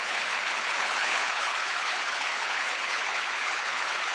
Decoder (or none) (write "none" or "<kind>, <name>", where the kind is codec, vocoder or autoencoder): codec, HILCodec